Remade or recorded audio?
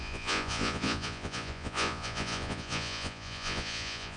remade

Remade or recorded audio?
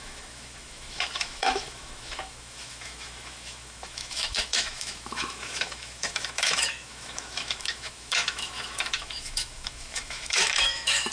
remade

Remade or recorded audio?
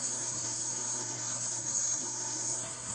remade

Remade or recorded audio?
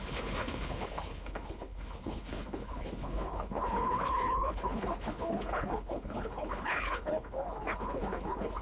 remade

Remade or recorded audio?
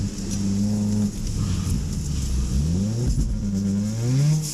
recorded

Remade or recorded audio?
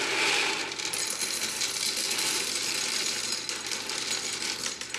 recorded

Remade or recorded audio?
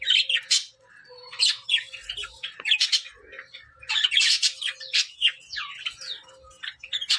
recorded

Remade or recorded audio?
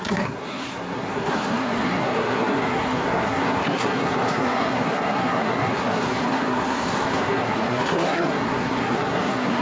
remade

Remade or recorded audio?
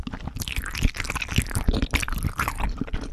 recorded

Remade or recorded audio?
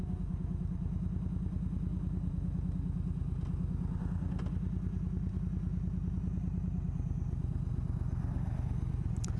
recorded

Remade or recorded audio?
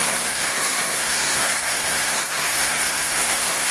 remade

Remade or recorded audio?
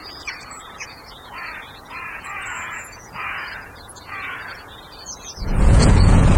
remade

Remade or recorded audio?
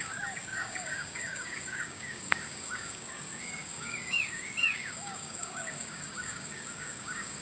remade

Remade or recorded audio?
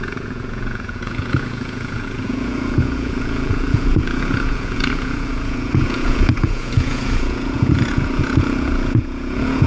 remade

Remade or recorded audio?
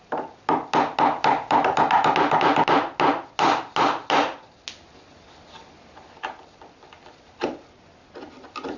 recorded